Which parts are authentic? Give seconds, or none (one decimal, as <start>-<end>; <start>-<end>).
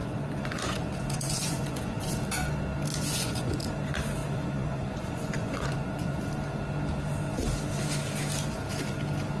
2.1-2.9; 3.6-4.2; 6.2-9.4